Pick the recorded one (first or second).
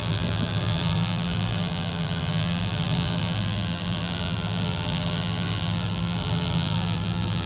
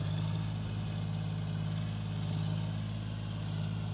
second